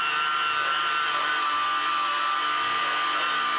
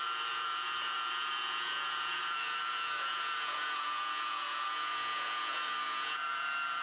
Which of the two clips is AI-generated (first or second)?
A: second